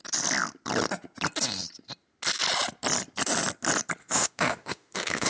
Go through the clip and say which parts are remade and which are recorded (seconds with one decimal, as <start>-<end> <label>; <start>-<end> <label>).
0.0-4.0 recorded; 4.0-5.3 remade